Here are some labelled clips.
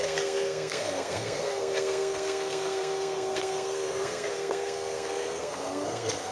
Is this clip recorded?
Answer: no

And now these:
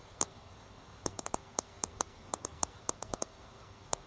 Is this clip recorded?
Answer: no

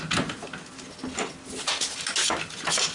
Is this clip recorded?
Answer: yes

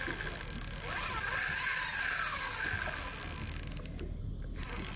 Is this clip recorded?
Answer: yes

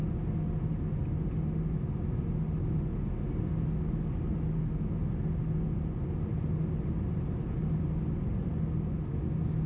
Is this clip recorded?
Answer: yes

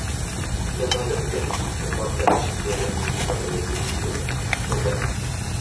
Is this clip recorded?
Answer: yes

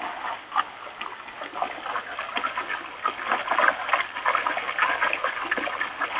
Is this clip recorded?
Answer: yes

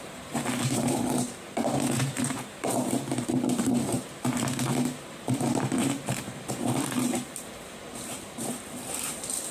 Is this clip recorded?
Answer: no